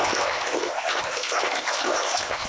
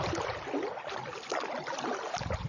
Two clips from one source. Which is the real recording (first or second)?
second